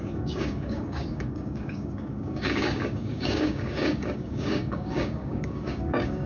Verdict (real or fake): fake